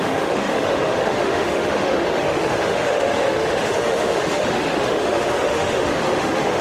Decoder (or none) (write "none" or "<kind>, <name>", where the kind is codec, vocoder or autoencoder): autoencoder, DAC-VAE